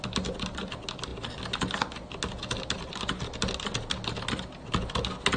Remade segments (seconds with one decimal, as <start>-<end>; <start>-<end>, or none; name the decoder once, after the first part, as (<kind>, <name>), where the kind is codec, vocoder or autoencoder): none